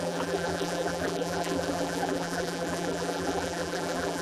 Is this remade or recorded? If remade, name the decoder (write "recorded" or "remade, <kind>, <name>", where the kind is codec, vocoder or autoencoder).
remade, vocoder, BigVGAN v2